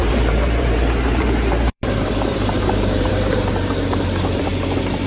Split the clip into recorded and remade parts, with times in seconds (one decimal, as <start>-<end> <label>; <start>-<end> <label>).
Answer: 0.0-4.5 remade; 4.5-5.1 recorded